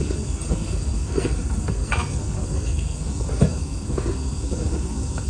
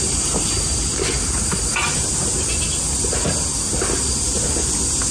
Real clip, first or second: second